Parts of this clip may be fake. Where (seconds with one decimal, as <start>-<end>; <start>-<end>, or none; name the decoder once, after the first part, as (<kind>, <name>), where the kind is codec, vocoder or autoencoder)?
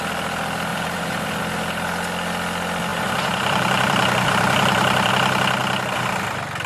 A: 0.7-1.4 (vocoder, BigVGAN v2); 2.9-5.1